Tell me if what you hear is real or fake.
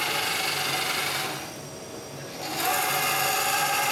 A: real